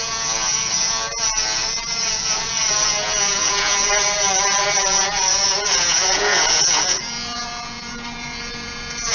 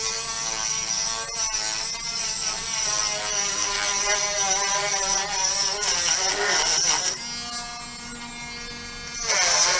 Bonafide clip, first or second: second